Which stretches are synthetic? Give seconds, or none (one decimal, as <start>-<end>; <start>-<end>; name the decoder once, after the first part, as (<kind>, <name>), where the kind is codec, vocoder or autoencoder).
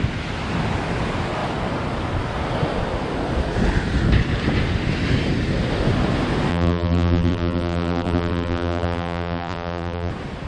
6.5-10.1 (vocoder, BigVGAN v2)